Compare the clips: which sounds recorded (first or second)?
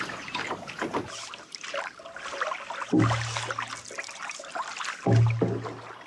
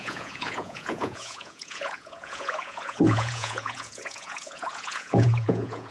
first